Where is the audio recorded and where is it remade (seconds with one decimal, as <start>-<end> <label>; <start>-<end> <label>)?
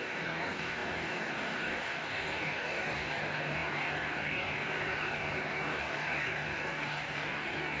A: 0.0-7.8 remade